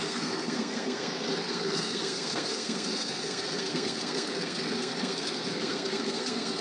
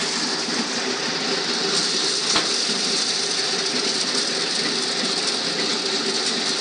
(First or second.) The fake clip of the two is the first